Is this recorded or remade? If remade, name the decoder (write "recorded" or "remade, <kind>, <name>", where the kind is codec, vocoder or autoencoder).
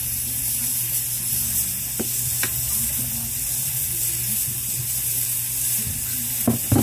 recorded